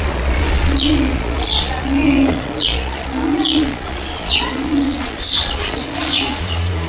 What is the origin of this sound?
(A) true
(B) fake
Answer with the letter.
B